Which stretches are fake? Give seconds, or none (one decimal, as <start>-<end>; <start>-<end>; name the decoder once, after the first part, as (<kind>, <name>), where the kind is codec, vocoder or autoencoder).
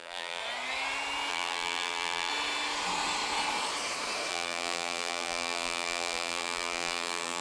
0.0-0.4 (vocoder, BigVGAN v2); 1.3-2.3; 4.3-7.4